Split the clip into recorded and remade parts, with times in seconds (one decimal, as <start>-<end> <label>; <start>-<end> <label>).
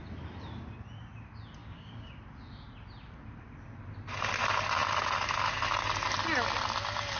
0.0-1.6 recorded; 1.6-2.1 remade; 2.1-7.2 recorded